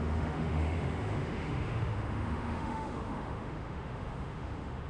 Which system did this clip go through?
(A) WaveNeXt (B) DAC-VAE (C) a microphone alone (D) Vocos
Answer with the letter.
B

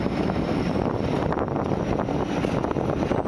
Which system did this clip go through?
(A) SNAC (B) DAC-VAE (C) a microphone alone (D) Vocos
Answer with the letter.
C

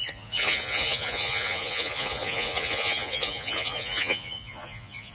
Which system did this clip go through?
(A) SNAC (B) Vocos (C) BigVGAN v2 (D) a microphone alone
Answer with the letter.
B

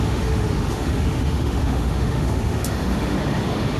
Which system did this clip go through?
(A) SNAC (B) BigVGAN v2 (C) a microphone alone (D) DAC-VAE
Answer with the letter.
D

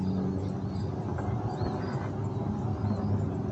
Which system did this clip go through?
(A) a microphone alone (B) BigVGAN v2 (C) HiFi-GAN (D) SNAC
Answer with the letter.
A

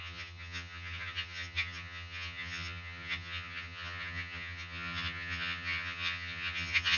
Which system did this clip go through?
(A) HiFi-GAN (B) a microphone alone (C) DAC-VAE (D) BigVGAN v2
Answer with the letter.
A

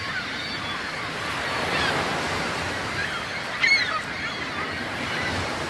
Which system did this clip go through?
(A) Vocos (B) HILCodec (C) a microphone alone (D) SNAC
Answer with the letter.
C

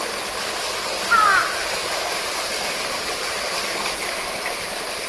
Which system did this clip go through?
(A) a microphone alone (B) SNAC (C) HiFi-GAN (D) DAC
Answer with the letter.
A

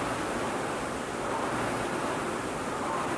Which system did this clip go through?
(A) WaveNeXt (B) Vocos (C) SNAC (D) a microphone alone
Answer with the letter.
D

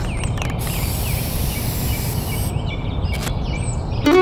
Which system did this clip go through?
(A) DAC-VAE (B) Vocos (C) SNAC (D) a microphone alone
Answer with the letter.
D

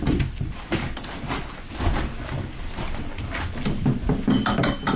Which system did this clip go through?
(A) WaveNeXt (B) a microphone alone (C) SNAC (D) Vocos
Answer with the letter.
B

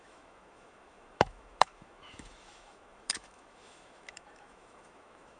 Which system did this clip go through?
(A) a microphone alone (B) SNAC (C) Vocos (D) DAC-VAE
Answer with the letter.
D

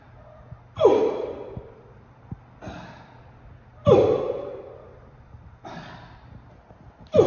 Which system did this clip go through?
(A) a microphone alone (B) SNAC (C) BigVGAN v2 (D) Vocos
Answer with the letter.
A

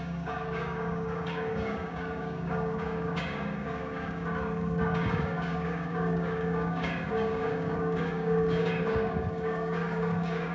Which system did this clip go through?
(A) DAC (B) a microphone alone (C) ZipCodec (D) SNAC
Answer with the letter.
A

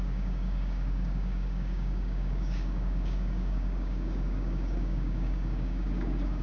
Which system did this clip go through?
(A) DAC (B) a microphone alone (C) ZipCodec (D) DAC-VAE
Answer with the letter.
A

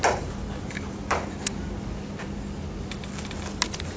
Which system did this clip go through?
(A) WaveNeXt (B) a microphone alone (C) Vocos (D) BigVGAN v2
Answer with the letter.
B